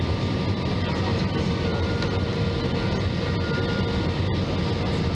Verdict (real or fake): real